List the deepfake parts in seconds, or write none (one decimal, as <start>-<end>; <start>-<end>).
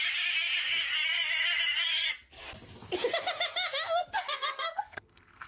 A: 4.0-5.5